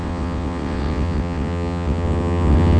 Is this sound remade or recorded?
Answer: remade